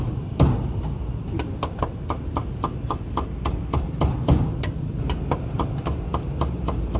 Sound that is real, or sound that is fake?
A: real